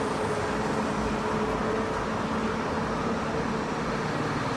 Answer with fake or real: real